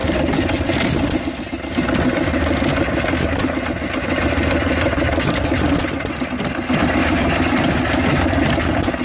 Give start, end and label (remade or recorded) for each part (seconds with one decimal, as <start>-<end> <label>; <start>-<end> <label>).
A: 0.0-7.0 recorded; 7.0-8.2 remade; 8.2-9.0 recorded